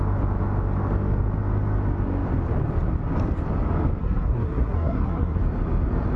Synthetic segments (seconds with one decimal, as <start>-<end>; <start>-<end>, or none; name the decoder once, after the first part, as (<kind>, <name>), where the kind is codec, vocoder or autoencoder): 4.0-5.4 (codec, SNAC)